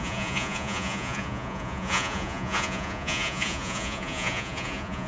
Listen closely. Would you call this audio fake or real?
fake